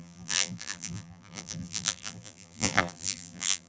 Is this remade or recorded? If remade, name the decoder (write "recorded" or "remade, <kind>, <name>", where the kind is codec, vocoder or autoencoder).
remade, vocoder, BigVGAN v2